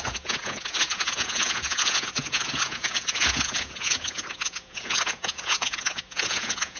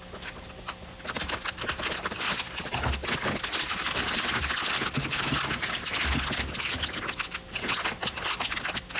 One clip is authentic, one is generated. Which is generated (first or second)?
first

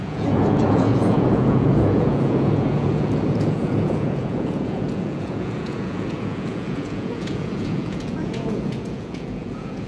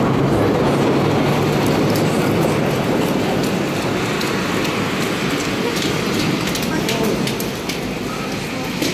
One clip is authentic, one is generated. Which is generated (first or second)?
first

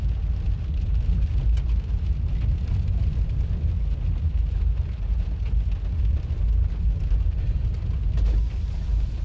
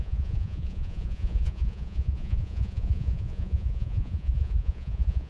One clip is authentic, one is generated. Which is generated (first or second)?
second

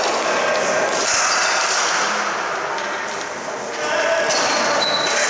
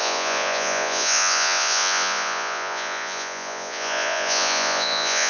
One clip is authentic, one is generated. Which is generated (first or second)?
second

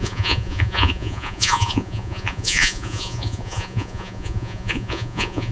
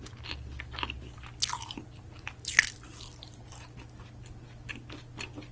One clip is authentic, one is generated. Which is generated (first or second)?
first